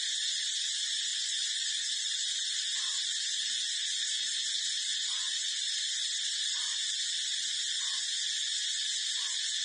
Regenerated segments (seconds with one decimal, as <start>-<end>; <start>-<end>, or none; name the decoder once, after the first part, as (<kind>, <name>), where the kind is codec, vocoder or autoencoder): 1.1-1.9 (vocoder, Vocos); 4.9-5.5